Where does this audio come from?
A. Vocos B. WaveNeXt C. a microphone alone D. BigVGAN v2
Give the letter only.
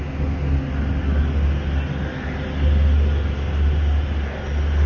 C